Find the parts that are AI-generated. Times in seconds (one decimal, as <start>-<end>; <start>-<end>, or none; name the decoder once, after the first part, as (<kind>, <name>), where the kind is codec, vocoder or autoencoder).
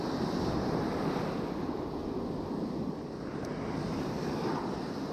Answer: none